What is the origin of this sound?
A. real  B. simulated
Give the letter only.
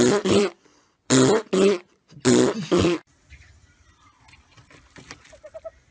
B